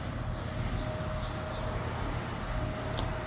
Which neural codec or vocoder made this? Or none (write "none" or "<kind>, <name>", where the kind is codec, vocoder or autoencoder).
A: none